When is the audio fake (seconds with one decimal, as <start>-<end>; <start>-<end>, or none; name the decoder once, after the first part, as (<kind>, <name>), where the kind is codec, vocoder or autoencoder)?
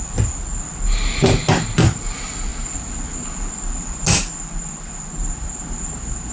none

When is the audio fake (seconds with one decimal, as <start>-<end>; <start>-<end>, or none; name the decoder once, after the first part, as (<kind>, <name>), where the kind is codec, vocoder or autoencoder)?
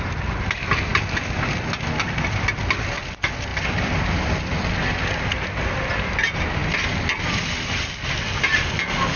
3.5-4.0 (vocoder, BigVGAN v2)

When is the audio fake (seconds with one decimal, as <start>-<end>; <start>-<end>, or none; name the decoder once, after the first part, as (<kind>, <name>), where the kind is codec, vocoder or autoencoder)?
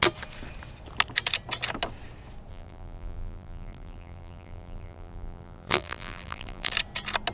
2.5-6.7 (vocoder, BigVGAN v2)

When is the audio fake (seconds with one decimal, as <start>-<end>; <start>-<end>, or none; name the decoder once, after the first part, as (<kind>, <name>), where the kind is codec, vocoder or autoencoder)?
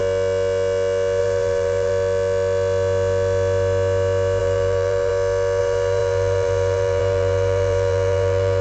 1.2-1.9 (vocoder, BigVGAN v2); 4.4-5.1; 5.6-8.6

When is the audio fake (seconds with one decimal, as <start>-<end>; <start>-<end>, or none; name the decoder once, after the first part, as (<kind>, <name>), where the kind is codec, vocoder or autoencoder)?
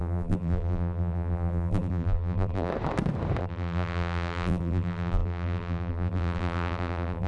0.0-2.7 (vocoder, BigVGAN v2); 3.4-7.3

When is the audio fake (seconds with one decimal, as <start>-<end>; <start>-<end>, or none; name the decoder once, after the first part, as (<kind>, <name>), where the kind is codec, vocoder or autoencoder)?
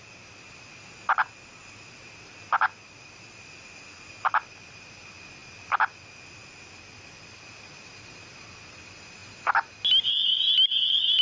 none